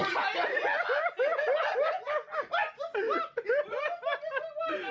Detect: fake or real real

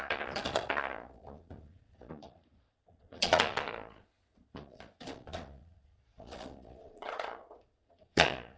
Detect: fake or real fake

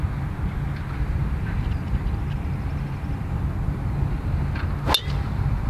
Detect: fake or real real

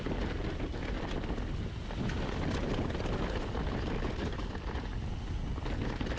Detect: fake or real real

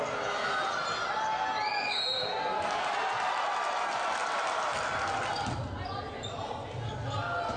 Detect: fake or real real